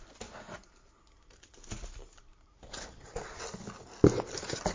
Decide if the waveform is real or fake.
real